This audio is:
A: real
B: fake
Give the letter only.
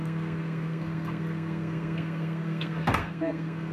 B